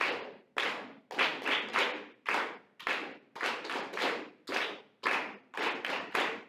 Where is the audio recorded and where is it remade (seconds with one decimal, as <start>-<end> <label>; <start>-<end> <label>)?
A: 0.0-6.5 recorded